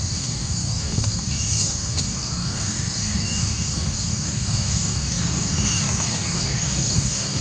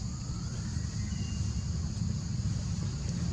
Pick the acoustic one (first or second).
second